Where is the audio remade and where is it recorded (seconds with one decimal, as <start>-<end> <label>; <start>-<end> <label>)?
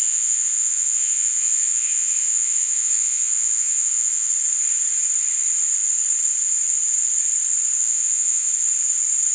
0.0-4.3 remade; 4.3-7.8 recorded; 7.8-8.5 remade; 8.5-9.3 recorded